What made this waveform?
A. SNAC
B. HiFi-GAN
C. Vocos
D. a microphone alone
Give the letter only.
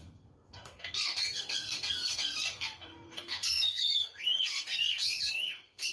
A